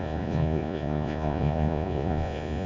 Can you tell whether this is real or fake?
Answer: fake